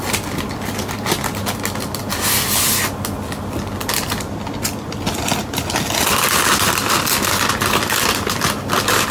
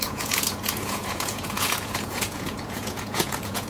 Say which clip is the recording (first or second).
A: first